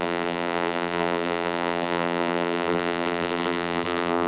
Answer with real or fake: fake